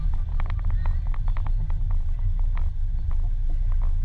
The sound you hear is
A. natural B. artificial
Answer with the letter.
A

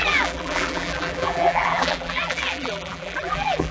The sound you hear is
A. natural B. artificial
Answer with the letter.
B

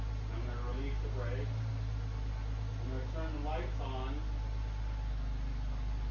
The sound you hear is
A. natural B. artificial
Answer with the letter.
A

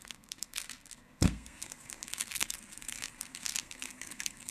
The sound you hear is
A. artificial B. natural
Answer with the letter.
A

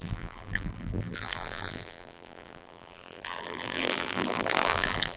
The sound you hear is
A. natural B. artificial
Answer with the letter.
B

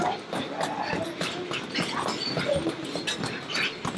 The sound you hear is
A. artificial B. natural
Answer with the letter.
B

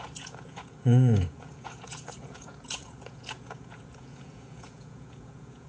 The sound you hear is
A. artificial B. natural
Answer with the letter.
A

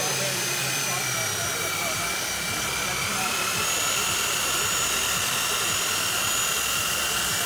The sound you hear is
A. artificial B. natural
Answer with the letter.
B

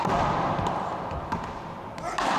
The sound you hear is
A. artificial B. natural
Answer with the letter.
B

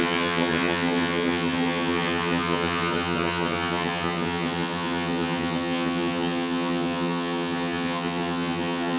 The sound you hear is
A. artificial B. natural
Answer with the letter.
A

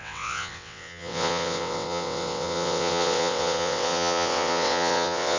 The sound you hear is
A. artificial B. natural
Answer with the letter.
A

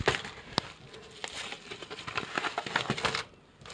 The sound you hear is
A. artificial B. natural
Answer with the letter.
B